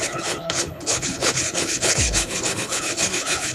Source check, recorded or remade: remade